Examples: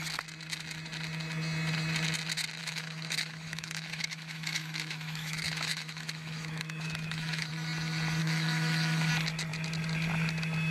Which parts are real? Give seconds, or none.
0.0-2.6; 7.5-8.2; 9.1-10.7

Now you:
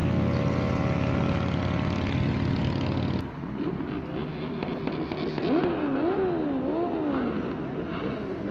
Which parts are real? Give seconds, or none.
0.0-8.5

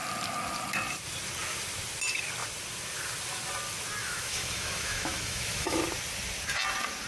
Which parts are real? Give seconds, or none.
0.0-4.0; 5.8-7.1

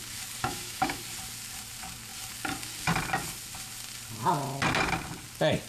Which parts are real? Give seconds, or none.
0.0-0.4; 1.0-5.7

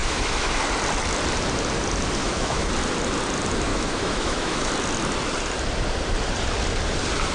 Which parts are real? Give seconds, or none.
0.6-2.2; 2.7-3.7; 4.7-7.3

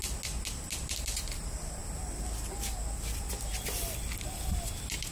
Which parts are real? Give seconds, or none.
0.0-5.1